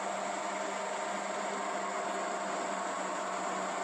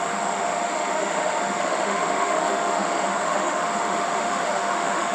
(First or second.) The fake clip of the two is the second